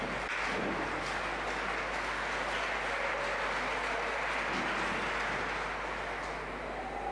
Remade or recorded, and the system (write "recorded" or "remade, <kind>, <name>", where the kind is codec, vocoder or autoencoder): recorded